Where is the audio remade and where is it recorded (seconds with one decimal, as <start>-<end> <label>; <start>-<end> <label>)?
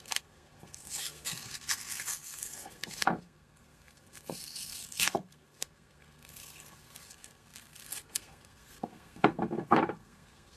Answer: 0.0-10.6 remade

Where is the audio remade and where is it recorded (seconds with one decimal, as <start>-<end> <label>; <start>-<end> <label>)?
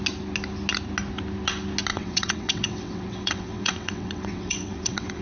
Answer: 0.0-1.9 recorded; 1.9-5.2 remade